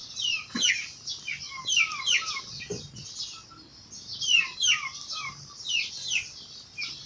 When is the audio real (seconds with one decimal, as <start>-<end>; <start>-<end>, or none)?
0.0-1.6; 3.0-7.1